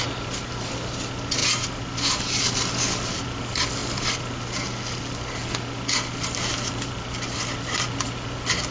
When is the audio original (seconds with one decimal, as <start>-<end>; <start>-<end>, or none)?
0.0-8.7